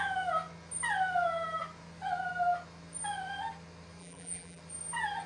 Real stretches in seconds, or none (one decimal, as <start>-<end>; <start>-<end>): 0.0-4.0; 4.6-5.3